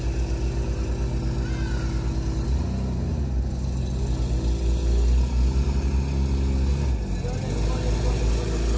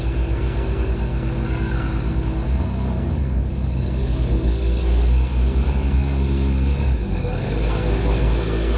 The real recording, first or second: first